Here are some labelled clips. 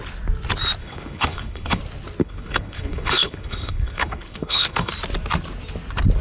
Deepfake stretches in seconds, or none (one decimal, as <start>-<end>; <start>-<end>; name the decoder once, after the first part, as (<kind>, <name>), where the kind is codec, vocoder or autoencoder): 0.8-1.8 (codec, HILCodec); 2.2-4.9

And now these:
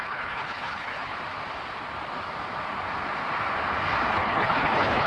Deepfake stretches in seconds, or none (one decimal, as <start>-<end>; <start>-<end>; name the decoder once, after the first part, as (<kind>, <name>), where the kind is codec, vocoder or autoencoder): 0.0-1.1 (codec, HILCodec); 4.1-5.1

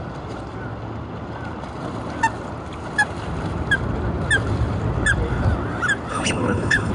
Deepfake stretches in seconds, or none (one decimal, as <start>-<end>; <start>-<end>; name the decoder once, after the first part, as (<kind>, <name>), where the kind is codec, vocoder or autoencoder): 6.1-6.9 (codec, HILCodec)

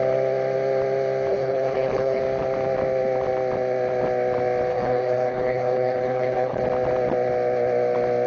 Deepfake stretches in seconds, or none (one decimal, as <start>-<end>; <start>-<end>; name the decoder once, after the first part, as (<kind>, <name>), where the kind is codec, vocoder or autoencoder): 1.3-2.2 (codec, HILCodec); 4.7-6.6

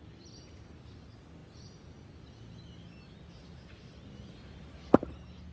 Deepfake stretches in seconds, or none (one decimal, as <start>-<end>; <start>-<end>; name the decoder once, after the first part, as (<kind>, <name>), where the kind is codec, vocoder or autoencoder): none

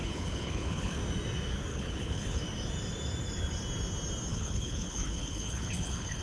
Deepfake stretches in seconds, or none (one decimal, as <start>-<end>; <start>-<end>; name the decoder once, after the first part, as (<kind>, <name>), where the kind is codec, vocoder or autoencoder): 0.0-1.0 (codec, HILCodec); 1.7-2.4; 4.3-6.2